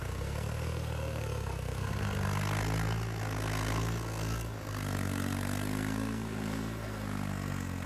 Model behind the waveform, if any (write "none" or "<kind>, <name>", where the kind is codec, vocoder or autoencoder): codec, SNAC